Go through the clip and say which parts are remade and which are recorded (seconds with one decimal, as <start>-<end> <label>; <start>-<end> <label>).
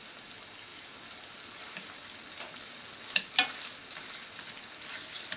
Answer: 0.0-5.4 recorded